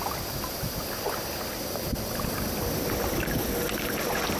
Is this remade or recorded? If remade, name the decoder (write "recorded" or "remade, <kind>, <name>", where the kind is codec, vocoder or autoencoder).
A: recorded